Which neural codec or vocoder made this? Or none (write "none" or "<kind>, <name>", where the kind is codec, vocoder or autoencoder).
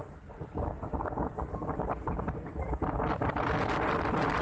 vocoder, BigVGAN v2